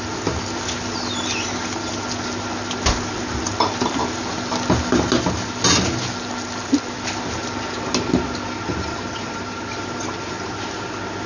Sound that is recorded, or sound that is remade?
recorded